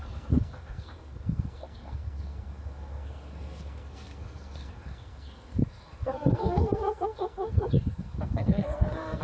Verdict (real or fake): fake